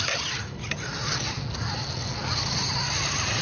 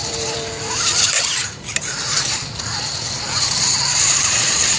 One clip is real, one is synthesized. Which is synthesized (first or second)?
second